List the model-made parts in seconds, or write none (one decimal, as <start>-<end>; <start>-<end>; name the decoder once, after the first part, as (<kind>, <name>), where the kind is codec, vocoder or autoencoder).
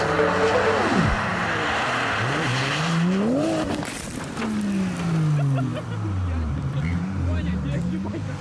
1.3-4.4 (vocoder, BigVGAN v2); 5.7-7.8